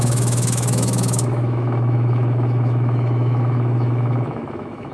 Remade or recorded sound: remade